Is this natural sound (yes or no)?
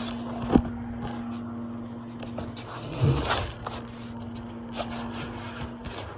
yes